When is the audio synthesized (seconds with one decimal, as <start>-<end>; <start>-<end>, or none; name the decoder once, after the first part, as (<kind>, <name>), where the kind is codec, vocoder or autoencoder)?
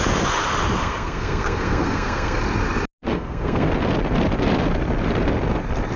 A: 0.8-2.4 (codec, SNAC); 3.1-3.7